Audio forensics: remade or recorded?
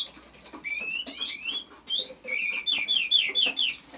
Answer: recorded